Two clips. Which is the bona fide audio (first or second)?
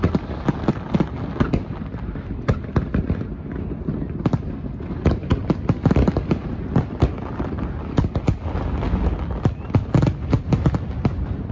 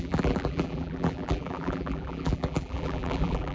first